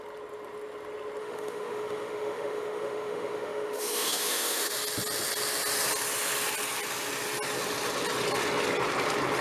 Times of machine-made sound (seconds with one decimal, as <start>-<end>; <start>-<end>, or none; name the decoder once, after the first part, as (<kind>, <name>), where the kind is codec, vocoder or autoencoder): 1.2-4.7 (autoencoder, DAC-VAE)